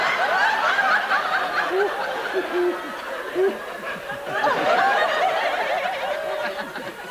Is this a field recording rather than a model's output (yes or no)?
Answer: yes